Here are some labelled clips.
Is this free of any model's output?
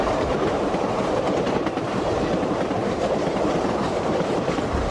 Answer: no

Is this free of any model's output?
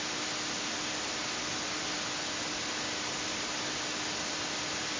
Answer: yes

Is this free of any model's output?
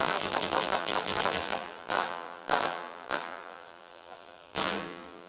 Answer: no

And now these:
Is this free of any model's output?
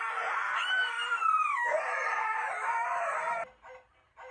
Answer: yes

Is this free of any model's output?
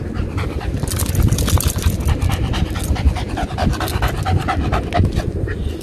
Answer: yes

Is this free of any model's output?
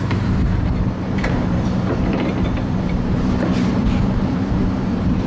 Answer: no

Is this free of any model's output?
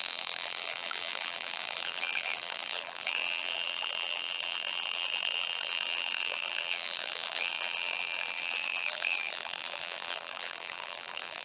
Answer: no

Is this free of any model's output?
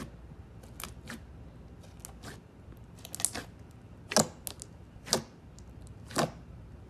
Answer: yes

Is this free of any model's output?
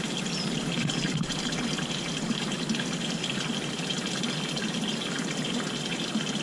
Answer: yes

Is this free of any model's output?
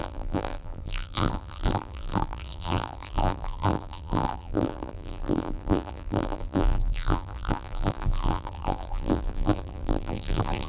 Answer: no